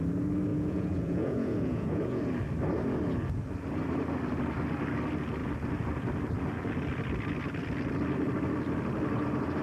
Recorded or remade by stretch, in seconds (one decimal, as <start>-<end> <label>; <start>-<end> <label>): 0.0-0.5 recorded; 0.5-2.2 remade; 2.2-9.6 recorded